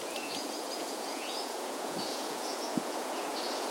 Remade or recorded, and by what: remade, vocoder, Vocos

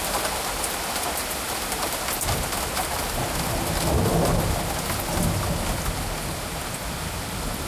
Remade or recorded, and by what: recorded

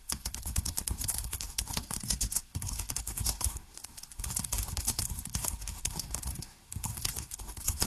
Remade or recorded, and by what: remade, codec, SNAC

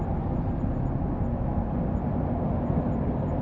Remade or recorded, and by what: recorded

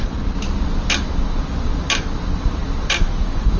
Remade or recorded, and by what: recorded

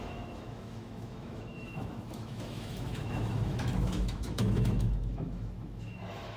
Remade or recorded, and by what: remade, autoencoder, DAC-VAE